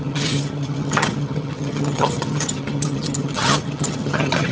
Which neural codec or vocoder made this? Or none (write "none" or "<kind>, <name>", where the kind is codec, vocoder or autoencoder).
vocoder, HiFi-GAN